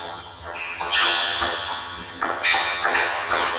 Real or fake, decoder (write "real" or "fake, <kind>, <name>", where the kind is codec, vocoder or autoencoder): fake, vocoder, HiFi-GAN